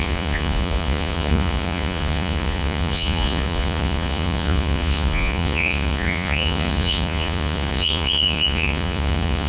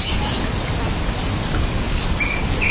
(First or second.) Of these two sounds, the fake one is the first